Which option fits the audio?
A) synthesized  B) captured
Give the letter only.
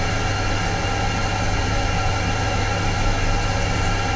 B